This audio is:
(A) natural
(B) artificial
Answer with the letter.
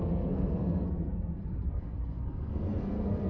B